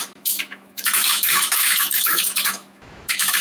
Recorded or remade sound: remade